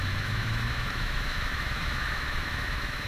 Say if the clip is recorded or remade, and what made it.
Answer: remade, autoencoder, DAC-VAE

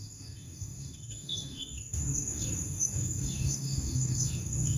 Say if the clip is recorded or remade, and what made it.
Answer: remade, codec, DAC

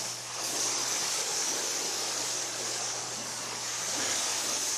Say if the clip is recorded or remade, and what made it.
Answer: remade, codec, DAC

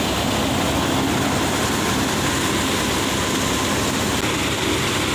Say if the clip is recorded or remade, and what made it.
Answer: recorded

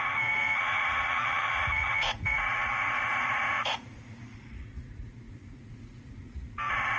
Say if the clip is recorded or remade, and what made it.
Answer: remade, vocoder, Vocos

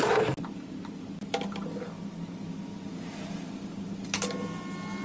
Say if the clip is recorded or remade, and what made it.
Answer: recorded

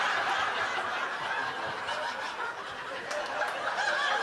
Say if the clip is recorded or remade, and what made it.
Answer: recorded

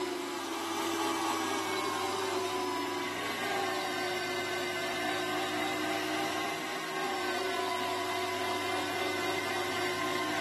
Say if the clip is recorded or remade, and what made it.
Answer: recorded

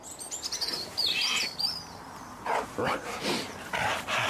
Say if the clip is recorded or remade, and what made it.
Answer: recorded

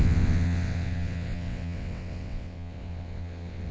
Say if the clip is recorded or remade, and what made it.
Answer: remade, vocoder, WaveNeXt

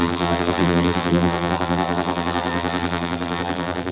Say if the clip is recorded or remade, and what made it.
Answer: remade, vocoder, BigVGAN v2